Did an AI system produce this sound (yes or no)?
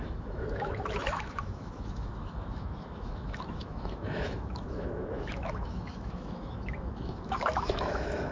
yes